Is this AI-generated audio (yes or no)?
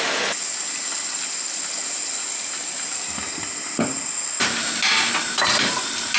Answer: no